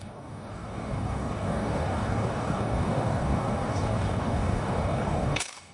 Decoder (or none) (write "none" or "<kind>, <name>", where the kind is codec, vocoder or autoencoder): codec, DAC